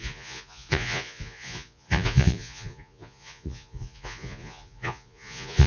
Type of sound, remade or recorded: remade